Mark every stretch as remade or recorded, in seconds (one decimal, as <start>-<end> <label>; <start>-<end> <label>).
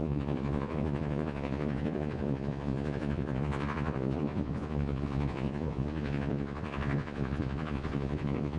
0.0-8.6 remade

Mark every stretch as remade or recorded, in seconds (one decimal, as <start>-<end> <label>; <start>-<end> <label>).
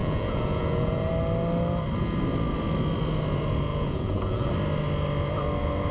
0.0-1.1 remade; 1.1-3.7 recorded; 3.7-4.5 remade; 4.5-5.9 recorded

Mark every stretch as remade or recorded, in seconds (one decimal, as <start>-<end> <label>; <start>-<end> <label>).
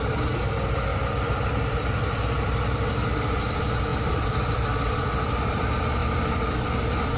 0.0-7.2 recorded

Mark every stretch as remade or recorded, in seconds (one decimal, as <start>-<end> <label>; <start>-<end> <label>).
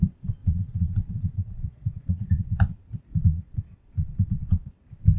0.0-0.4 recorded; 0.4-2.6 remade; 2.6-3.1 recorded; 3.1-4.7 remade; 4.7-5.2 recorded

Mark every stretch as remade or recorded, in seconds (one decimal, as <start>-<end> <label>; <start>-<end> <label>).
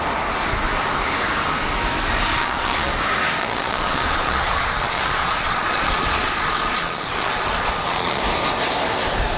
0.0-2.3 recorded; 2.3-2.9 remade; 2.9-3.4 recorded; 3.4-8.2 remade; 8.2-9.4 recorded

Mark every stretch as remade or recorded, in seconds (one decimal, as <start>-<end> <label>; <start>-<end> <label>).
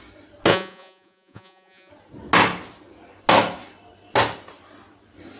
0.0-0.5 recorded; 0.5-1.9 remade; 1.9-5.4 recorded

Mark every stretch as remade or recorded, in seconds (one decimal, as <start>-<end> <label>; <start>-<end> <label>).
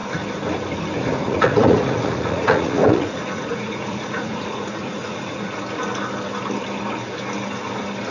0.0-1.2 recorded; 1.2-5.6 remade; 5.6-8.1 recorded